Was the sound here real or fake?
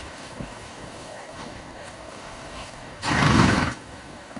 fake